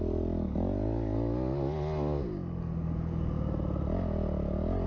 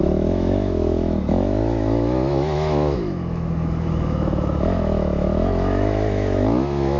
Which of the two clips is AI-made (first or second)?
second